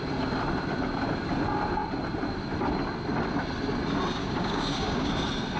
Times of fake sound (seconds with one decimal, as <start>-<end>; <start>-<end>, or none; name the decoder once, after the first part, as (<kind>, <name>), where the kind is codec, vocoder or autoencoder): 4.2-5.1 (codec, DAC)